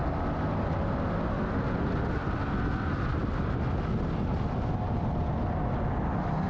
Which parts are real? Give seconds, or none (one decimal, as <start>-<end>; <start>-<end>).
0.0-6.5